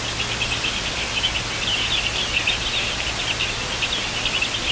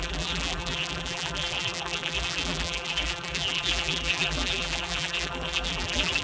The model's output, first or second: second